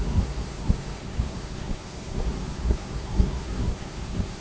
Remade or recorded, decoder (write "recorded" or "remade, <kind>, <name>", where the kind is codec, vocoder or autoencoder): remade, codec, SNAC